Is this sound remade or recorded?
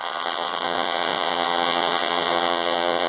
remade